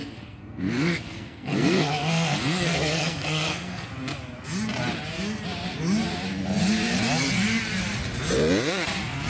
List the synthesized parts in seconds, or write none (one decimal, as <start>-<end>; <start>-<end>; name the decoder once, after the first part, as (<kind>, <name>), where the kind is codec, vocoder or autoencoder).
0.0-3.9 (codec, SNAC)